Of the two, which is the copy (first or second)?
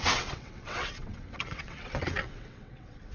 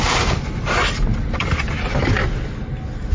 first